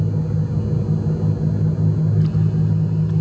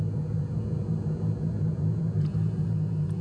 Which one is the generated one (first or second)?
second